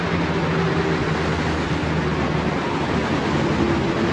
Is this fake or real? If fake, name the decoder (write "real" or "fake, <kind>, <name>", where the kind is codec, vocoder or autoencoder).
real